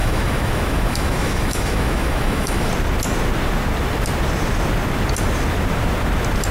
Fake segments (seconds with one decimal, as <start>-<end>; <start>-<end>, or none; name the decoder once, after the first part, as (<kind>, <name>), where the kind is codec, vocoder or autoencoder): 0.0-2.7 (autoencoder, DAC-VAE)